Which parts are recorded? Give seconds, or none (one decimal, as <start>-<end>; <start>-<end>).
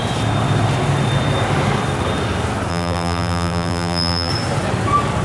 0.0-2.7; 4.3-5.2